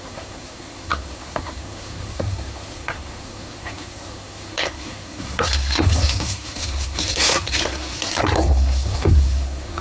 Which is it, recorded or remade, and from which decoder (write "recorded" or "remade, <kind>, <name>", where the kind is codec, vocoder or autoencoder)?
remade, codec, SNAC